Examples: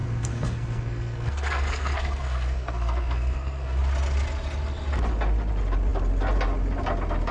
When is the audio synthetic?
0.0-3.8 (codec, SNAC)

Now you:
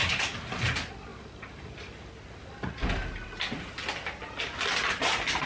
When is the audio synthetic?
0.0-0.7 (vocoder, BigVGAN v2)

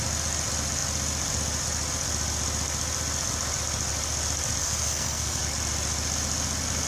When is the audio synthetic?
4.6-5.4 (codec, SNAC)

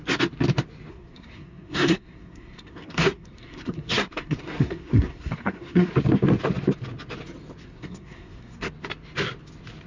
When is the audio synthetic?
0.9-5.9 (codec, SNAC); 7.6-8.7

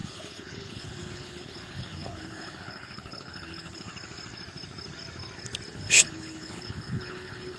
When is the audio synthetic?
0.0-3.9 (codec, HILCodec); 5.7-7.6

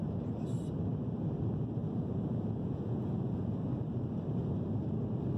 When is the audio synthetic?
1.8-3.7 (vocoder, Vocos)

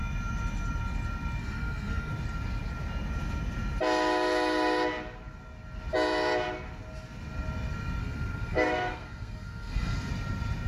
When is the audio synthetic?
1.4-2.1 (codec, SNAC); 8.0-10.1